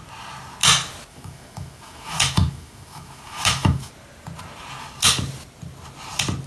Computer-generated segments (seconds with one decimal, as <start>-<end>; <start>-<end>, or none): 1.1-3.9